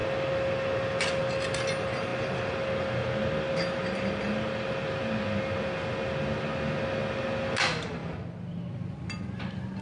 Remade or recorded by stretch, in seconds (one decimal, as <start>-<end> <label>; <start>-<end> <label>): 0.0-1.0 remade; 1.0-2.1 recorded; 2.1-5.4 remade; 5.4-9.8 recorded

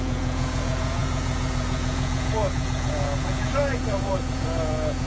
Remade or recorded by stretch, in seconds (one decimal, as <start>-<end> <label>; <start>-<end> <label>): 0.0-5.1 remade

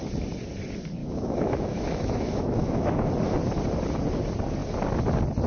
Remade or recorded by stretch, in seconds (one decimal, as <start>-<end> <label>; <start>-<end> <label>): 0.0-1.0 recorded; 1.0-3.1 remade; 3.1-5.5 recorded

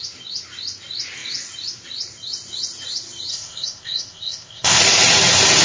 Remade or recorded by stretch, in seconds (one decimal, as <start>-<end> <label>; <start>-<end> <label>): 0.0-3.3 recorded; 3.3-4.8 remade; 4.8-5.6 recorded

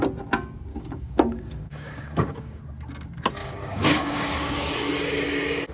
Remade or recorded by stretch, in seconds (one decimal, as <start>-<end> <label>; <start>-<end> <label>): 0.0-0.7 recorded; 0.7-2.6 remade; 2.6-3.4 recorded; 3.4-4.7 remade; 4.7-5.7 recorded